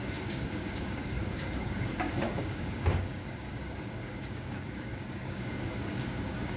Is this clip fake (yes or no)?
yes